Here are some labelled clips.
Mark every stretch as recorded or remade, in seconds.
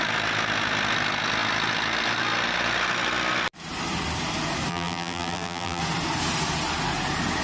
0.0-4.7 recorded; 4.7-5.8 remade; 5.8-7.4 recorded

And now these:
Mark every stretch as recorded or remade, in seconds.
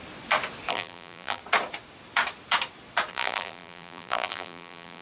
0.0-0.7 recorded; 0.7-1.4 remade; 1.4-3.1 recorded; 3.1-5.0 remade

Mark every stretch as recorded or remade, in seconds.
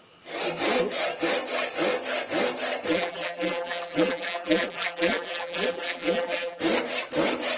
0.0-2.9 recorded; 2.9-6.6 remade; 6.6-7.6 recorded